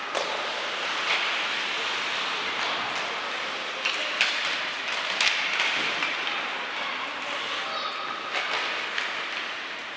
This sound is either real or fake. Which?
real